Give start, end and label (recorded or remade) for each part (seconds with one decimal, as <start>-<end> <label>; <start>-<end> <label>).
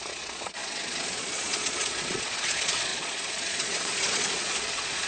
0.0-5.1 remade